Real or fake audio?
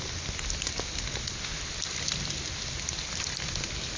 real